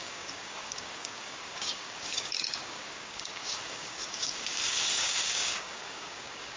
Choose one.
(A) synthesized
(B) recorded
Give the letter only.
A